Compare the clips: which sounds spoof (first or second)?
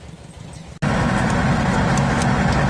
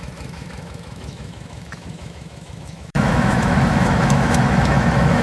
second